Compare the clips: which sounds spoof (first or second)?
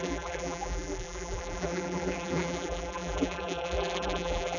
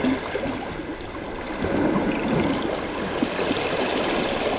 first